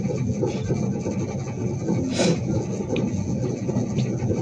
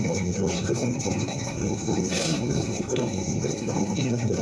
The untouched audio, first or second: first